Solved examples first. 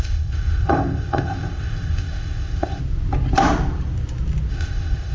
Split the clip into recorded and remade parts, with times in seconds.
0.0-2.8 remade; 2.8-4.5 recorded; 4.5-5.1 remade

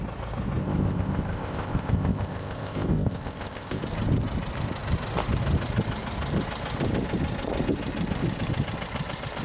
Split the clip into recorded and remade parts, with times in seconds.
0.0-0.6 recorded; 0.6-3.8 remade; 3.8-9.4 recorded